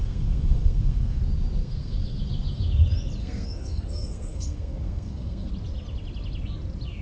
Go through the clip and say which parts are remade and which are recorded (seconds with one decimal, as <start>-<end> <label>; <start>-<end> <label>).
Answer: 0.0-1.2 remade; 1.2-1.6 recorded; 1.6-2.2 remade; 2.2-3.2 recorded; 3.2-5.5 remade; 5.5-7.0 recorded